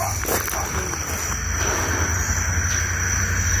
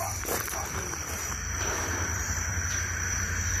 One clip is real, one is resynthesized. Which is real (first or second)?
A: first